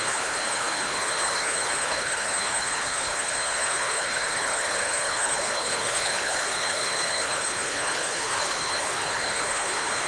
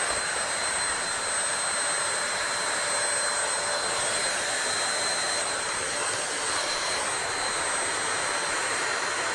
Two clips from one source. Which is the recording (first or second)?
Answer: second